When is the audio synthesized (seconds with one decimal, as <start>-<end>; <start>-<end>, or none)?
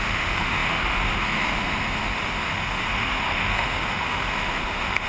0.0-5.1